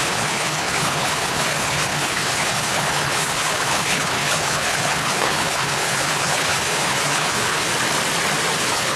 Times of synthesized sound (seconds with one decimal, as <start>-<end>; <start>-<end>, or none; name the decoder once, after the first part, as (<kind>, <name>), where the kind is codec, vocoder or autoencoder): 0.0-7.7 (codec, HILCodec); 8.6-9.0